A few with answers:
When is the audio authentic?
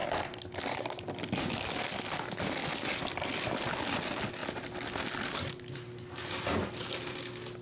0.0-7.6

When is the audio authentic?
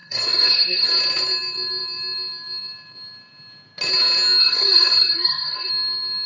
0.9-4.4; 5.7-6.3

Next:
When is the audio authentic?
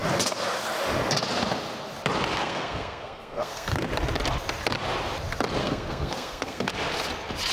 0.0-2.4; 3.8-5.6; 6.7-7.5